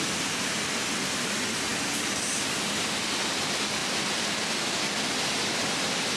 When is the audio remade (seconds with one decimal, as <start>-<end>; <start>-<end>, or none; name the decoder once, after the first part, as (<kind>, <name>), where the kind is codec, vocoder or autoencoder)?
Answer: none